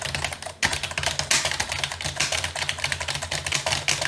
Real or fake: real